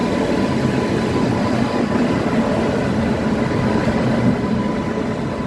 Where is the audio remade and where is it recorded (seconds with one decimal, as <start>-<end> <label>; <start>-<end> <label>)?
0.0-3.2 recorded; 3.2-4.9 remade; 4.9-5.5 recorded